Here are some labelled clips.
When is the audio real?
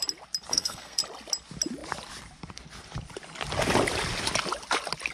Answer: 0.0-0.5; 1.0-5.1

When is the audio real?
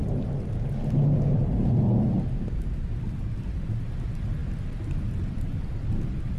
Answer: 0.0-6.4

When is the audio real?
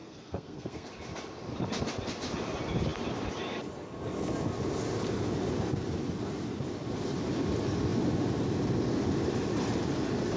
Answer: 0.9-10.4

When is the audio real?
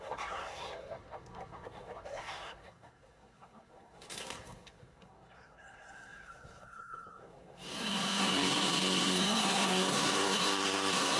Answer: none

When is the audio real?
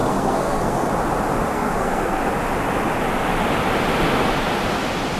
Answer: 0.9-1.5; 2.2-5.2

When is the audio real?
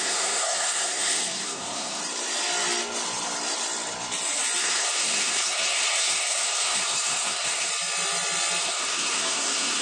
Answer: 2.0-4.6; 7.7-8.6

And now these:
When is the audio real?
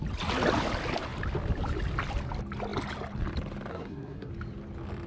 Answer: 0.0-3.7; 4.3-5.1